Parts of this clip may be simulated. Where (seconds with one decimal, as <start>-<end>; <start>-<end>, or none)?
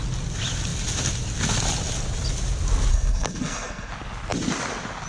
2.9-3.9